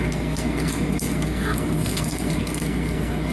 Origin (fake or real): fake